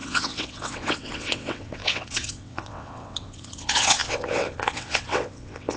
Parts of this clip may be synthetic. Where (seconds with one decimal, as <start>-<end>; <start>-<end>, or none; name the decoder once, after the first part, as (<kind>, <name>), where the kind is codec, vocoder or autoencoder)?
0.0-5.8 (vocoder, WaveNeXt)